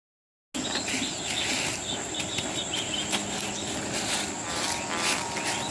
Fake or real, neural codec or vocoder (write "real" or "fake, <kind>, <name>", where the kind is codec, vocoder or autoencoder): real